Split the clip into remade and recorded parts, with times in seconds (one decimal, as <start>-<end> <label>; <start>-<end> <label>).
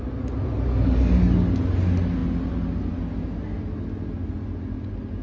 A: 0.0-5.2 recorded